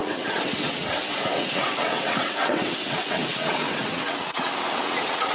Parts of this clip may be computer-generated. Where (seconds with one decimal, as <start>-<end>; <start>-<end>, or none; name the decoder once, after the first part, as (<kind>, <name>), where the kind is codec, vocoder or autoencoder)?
0.0-5.3 (vocoder, WaveNeXt)